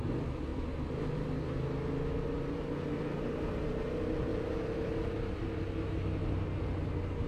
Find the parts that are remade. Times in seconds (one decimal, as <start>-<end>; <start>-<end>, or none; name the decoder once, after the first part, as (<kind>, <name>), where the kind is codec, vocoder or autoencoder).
4.3-4.9 (vocoder, BigVGAN v2)